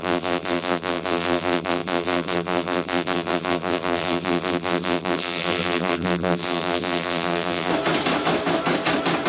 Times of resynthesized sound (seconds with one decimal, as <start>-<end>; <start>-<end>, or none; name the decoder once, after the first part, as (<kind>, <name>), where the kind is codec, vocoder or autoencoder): 0.0-7.7 (vocoder, BigVGAN v2)